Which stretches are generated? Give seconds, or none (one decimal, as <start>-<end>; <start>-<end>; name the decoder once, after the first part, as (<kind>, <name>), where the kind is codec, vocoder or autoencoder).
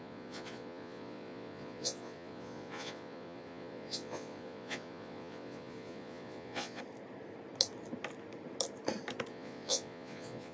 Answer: 0.0-6.8 (vocoder, Vocos); 9.3-10.5